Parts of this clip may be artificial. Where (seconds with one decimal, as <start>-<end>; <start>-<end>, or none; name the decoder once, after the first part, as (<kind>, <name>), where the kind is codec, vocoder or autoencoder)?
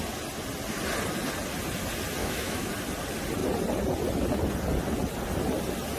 2.2-2.7 (autoencoder, DAC-VAE)